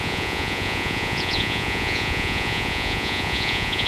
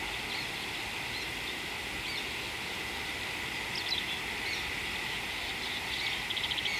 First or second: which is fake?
first